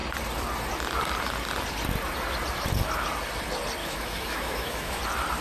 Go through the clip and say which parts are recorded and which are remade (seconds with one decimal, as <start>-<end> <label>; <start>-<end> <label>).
0.0-3.8 recorded; 3.8-5.0 remade; 5.0-5.4 recorded